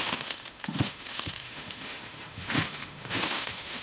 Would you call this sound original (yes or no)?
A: no